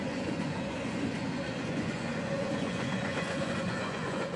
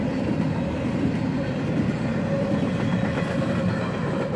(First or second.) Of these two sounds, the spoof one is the first